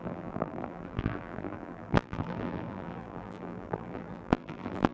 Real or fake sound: fake